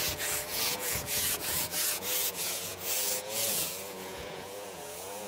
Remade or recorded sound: remade